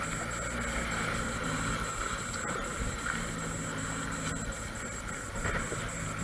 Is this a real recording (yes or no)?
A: yes